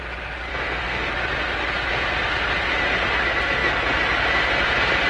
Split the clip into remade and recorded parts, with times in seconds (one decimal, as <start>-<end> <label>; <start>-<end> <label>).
0.0-0.5 recorded; 0.5-1.1 remade; 1.1-5.1 recorded